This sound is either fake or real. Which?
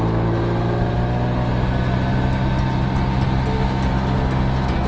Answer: real